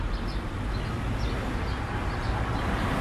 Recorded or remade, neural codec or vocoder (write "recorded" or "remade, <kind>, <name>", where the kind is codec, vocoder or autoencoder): recorded